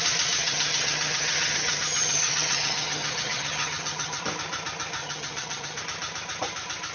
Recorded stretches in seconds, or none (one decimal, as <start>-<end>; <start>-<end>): 0.0-0.4; 4.2-5.0; 5.8-6.9

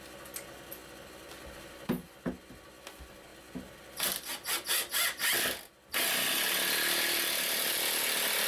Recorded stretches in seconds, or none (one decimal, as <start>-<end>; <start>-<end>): 0.0-8.5

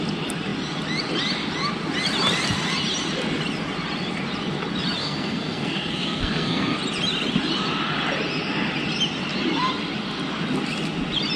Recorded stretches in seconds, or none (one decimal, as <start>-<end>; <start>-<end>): 0.0-5.0; 6.8-11.4